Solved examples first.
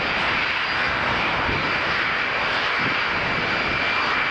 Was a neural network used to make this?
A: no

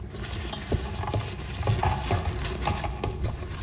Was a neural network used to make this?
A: no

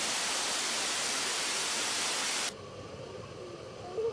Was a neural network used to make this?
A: no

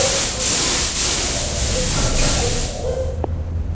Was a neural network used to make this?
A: no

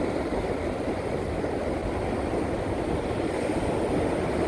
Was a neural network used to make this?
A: no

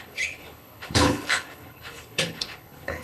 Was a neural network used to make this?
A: yes